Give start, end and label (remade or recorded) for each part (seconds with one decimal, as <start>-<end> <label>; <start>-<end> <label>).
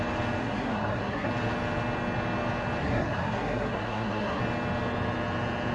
0.0-0.4 recorded; 0.4-1.3 remade; 1.3-2.8 recorded; 2.8-4.4 remade; 4.4-5.7 recorded